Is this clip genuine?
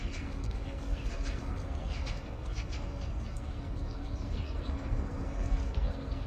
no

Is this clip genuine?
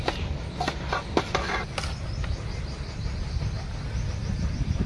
yes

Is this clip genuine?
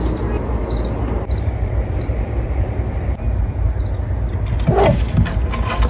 yes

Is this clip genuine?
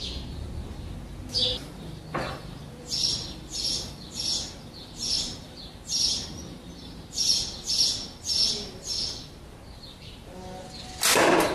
yes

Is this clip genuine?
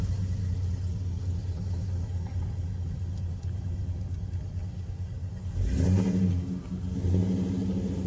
yes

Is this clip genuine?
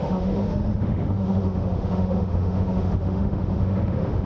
no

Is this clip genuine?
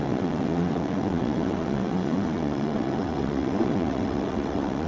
no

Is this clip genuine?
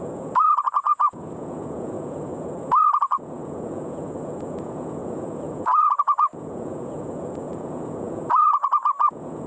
no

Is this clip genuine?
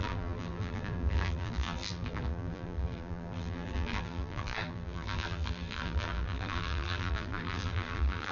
no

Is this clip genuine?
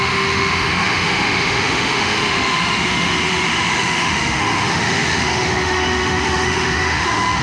no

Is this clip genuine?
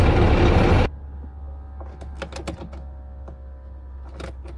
yes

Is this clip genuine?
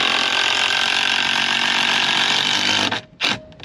yes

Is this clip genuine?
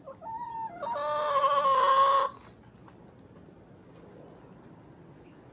yes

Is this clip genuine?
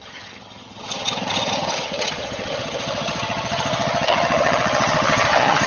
no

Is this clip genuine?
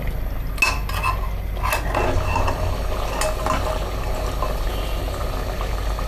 yes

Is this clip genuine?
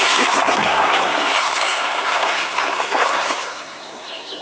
no